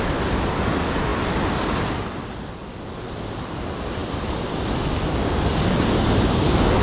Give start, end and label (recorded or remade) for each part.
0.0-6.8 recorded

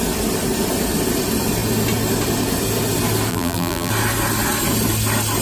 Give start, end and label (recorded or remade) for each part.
0.0-3.3 recorded; 3.3-3.9 remade; 3.9-5.4 recorded